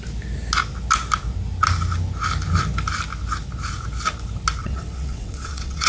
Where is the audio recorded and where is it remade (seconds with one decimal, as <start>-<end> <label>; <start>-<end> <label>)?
0.0-4.6 recorded; 4.6-5.9 remade